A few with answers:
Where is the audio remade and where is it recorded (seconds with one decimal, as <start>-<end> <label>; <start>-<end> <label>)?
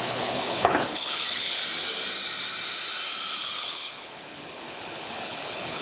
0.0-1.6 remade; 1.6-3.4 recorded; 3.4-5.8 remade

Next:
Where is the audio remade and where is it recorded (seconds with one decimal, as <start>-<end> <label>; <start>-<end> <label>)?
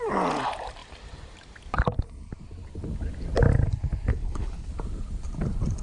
0.0-4.1 recorded; 4.1-4.7 remade; 4.7-5.8 recorded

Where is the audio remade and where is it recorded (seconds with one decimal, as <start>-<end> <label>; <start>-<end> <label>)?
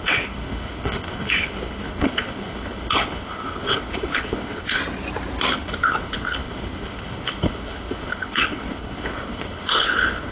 0.0-4.8 remade; 4.8-5.5 recorded; 5.5-10.3 remade